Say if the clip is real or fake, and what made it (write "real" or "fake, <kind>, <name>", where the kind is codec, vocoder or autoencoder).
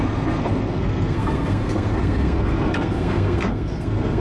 fake, codec, SNAC